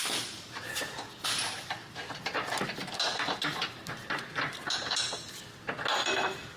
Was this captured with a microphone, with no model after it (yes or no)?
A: yes